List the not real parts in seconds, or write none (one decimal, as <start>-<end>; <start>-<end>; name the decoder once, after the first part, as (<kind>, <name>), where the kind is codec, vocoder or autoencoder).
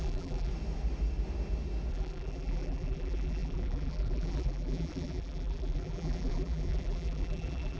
0.0-0.5 (vocoder, BigVGAN v2); 1.9-7.8